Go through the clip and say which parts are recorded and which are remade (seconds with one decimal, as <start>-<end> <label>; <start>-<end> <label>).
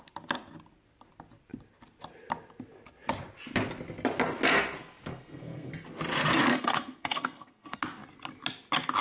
0.0-5.1 recorded; 5.1-5.7 remade; 5.7-6.5 recorded; 6.5-7.8 remade; 7.8-9.0 recorded